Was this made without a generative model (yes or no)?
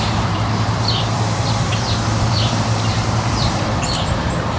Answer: no